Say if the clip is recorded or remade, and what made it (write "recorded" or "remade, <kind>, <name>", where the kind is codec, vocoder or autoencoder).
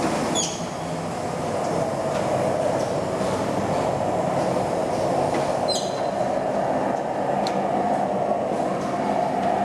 recorded